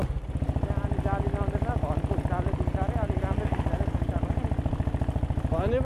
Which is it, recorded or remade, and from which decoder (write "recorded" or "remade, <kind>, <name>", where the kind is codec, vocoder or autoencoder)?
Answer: recorded